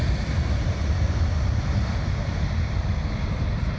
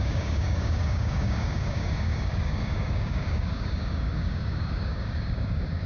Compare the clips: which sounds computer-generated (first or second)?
second